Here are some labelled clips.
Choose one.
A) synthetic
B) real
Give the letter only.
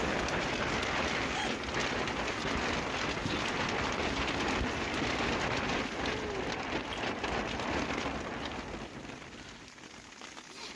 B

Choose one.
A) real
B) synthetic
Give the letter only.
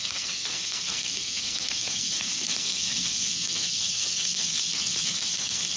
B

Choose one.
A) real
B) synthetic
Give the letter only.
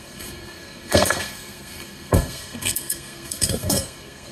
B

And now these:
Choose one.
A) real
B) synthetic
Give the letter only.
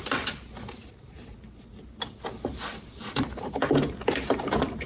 B